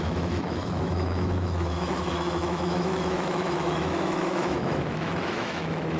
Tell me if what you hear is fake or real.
fake